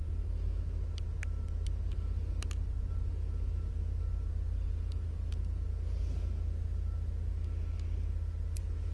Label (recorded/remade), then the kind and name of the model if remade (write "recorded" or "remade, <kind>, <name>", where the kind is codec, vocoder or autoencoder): recorded